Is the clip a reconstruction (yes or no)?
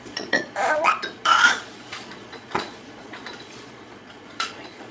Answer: yes